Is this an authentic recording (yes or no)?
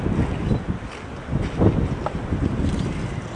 yes